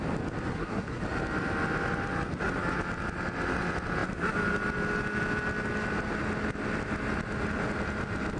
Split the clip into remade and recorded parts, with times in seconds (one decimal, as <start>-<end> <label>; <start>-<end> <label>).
0.0-0.5 recorded; 0.5-1.0 remade; 1.0-8.4 recorded